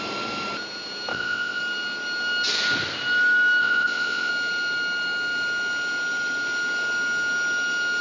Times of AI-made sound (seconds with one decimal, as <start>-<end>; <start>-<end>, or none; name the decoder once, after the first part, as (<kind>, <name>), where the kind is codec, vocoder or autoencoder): 1.1-1.6 (vocoder, WaveNeXt); 3.6-4.3